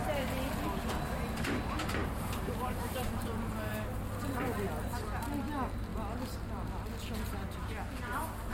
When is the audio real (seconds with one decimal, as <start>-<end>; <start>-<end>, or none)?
0.0-2.0; 3.7-8.5